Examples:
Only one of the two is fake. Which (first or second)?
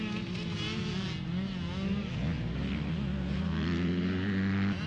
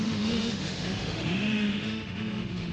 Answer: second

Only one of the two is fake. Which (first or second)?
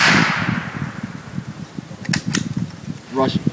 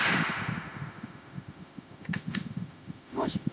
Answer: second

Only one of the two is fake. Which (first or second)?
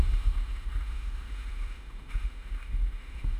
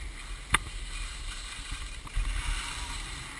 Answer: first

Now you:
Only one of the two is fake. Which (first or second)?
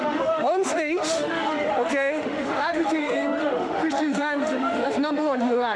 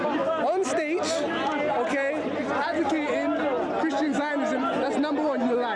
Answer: first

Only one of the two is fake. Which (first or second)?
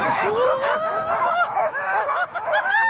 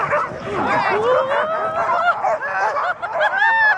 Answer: first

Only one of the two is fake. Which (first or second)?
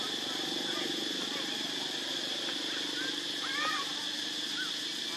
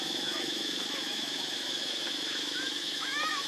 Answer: second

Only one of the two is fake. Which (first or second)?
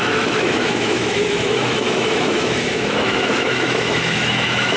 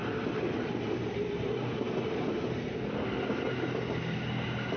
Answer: first